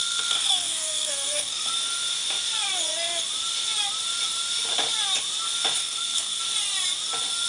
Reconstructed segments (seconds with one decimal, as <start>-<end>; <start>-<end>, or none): 0.0-1.7; 5.8-6.4